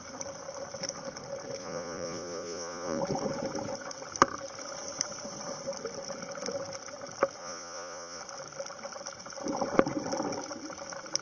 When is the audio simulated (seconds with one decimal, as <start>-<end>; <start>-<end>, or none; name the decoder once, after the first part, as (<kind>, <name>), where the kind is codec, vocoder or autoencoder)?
1.6-3.0 (vocoder, Vocos); 7.4-8.2